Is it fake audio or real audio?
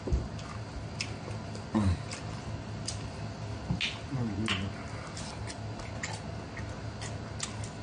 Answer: real